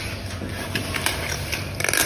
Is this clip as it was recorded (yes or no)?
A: yes